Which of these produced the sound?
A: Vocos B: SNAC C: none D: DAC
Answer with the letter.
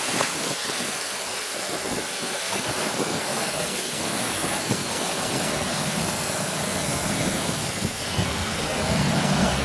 B